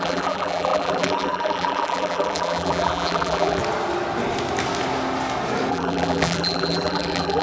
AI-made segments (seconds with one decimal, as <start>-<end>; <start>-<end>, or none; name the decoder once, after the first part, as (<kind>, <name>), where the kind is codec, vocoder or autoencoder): 0.0-3.6 (vocoder, BigVGAN v2); 5.7-7.4